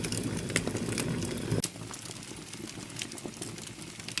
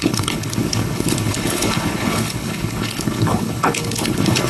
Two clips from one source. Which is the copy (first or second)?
second